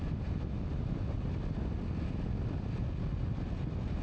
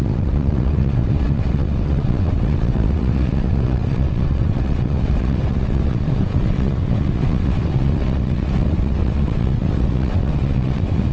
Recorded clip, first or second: first